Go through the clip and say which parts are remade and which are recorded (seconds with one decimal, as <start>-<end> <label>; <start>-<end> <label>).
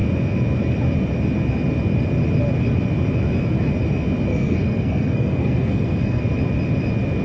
0.0-4.3 recorded; 4.3-6.2 remade; 6.2-7.2 recorded